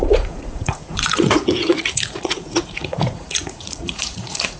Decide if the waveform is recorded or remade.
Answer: remade